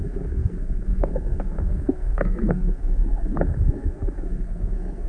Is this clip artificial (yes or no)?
yes